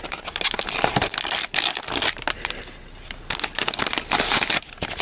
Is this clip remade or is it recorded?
recorded